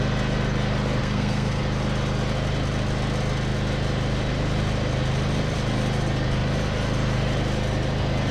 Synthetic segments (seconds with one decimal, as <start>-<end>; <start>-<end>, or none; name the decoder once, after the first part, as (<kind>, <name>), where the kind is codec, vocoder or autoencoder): 1.0-1.6 (codec, SNAC)